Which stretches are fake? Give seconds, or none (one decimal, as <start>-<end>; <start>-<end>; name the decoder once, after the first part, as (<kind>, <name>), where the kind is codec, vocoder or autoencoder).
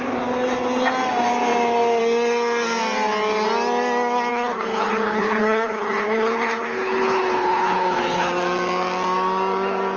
4.3-8.3 (codec, HILCodec)